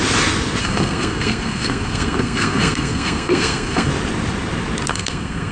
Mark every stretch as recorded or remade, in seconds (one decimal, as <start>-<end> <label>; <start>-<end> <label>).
0.0-0.6 recorded; 0.6-3.9 remade; 3.9-4.9 recorded; 4.9-5.5 remade